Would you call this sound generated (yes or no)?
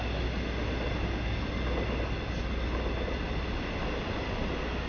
no